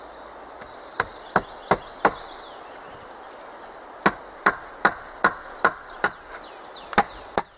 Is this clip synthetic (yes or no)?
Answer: no